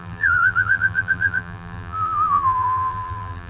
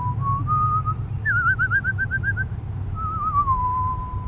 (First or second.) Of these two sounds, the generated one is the first